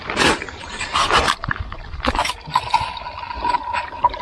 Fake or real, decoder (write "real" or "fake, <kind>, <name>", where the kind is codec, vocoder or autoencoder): real